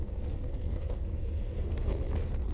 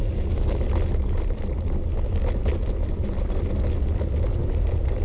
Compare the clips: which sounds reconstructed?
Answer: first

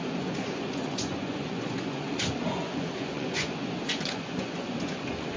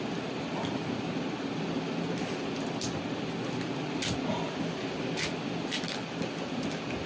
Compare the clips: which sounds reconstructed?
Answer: first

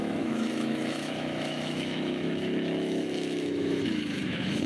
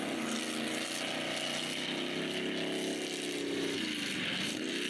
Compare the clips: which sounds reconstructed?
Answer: first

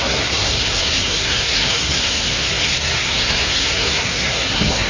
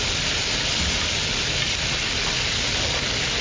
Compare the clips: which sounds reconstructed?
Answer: first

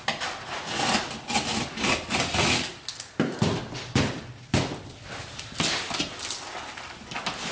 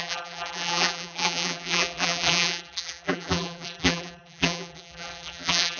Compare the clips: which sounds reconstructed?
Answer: second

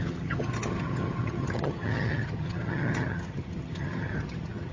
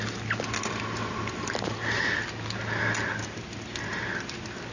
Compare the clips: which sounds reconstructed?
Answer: first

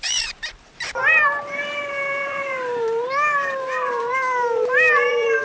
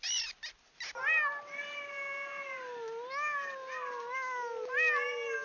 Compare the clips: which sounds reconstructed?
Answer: first